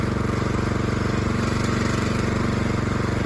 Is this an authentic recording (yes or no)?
yes